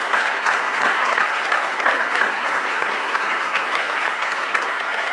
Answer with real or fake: fake